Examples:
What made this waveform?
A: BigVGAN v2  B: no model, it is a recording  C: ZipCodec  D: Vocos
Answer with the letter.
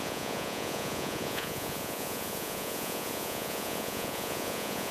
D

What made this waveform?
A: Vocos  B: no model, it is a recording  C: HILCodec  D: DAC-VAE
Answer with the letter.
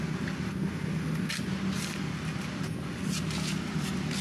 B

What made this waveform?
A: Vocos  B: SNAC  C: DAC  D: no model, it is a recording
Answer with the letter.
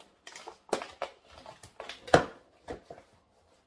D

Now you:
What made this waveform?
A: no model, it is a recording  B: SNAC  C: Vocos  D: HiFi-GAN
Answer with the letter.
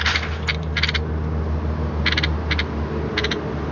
A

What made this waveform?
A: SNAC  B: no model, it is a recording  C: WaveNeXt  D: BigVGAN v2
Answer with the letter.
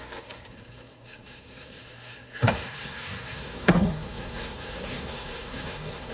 A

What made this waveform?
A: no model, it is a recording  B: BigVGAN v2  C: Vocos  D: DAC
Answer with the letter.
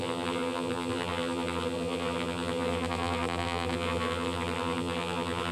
B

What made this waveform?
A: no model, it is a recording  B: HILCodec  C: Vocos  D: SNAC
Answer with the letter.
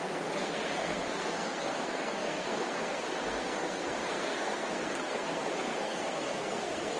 D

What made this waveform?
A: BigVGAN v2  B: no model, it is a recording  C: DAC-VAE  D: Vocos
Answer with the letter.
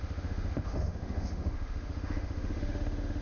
C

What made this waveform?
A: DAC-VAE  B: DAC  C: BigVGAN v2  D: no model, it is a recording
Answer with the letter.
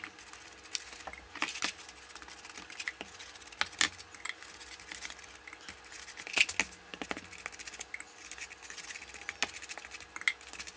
D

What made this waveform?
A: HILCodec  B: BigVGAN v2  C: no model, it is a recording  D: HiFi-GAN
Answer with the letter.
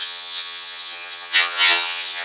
D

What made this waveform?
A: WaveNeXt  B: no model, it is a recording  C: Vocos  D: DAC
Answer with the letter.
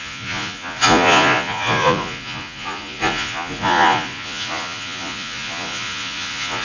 C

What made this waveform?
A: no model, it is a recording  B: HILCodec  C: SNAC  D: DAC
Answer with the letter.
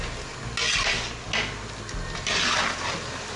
A